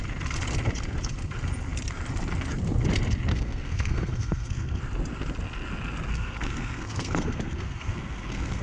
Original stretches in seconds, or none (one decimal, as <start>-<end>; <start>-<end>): 0.0-3.3; 4.8-6.1